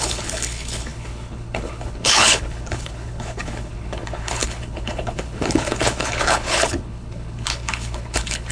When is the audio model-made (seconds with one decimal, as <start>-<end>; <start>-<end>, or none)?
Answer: 0.0-8.5